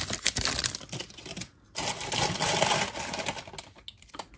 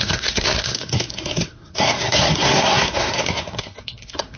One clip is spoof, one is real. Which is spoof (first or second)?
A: second